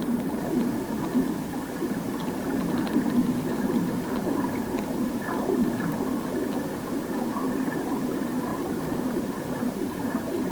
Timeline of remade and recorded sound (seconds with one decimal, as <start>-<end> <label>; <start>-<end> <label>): 0.0-8.5 recorded; 8.5-10.5 remade